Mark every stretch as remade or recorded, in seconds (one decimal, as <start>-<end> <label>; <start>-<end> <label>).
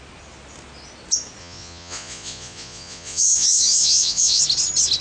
0.0-1.4 recorded; 1.4-4.4 remade; 4.4-5.0 recorded